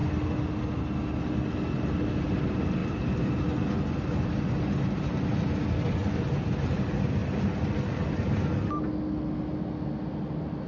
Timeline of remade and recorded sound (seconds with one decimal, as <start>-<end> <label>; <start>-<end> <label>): 0.0-10.7 recorded